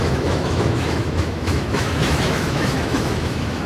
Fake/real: fake